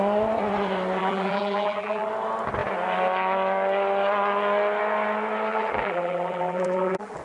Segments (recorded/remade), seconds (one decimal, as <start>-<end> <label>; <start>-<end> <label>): 0.0-1.0 recorded; 1.0-2.1 remade; 2.1-5.5 recorded; 5.5-7.2 remade